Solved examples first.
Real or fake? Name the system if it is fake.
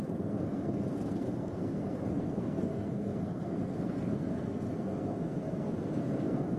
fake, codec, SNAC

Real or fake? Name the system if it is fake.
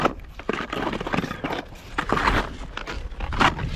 real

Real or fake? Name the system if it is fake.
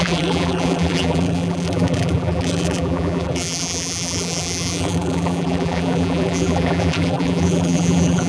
fake, vocoder, BigVGAN v2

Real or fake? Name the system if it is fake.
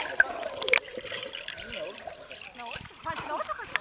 real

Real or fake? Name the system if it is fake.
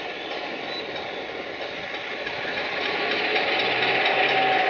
real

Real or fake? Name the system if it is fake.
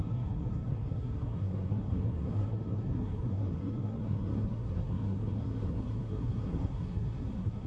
fake, codec, SNAC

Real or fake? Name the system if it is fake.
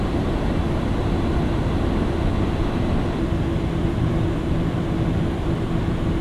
real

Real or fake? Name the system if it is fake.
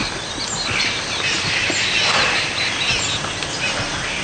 real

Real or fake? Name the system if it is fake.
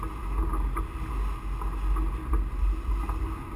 real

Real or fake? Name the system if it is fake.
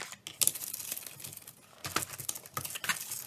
real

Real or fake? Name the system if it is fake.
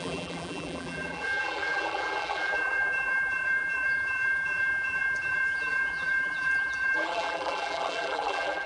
fake, vocoder, BigVGAN v2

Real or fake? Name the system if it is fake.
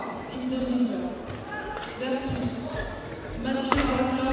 fake, vocoder, BigVGAN v2